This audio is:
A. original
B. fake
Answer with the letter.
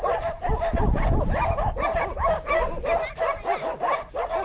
A